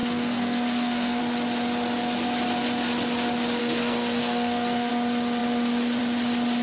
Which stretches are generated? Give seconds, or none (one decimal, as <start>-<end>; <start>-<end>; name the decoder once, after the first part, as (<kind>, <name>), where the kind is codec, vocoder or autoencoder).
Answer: 0.0-1.2 (codec, SNAC); 3.6-4.9